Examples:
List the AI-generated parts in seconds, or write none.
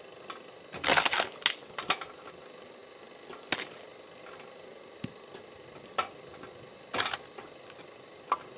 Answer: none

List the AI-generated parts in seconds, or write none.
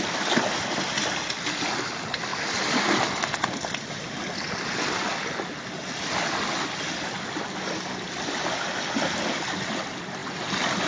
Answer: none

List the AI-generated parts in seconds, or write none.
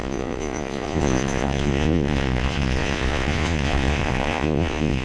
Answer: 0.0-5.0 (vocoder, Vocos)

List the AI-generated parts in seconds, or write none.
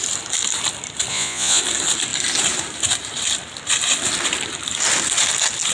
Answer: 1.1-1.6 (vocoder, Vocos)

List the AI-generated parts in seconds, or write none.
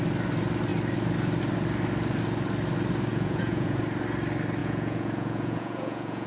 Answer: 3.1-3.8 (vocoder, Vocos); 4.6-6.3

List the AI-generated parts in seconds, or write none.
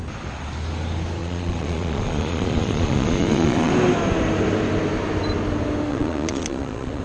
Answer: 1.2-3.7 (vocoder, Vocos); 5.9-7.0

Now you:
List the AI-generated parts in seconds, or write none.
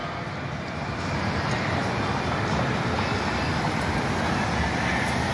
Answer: none